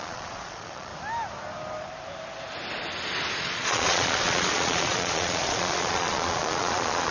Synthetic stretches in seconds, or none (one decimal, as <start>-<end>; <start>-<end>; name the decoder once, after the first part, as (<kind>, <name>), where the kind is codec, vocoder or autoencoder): 0.0-0.9 (vocoder, Vocos); 3.4-7.1